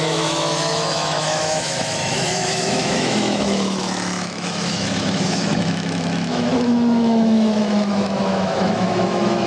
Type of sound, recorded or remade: remade